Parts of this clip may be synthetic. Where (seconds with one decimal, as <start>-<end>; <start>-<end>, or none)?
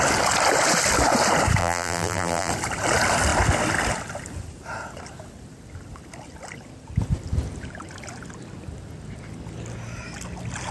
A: 1.6-2.5